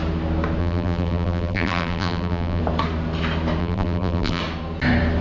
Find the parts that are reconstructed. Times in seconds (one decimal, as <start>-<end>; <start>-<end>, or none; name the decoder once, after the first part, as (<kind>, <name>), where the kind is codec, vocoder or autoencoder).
0.6-2.6 (vocoder, BigVGAN v2); 3.6-4.4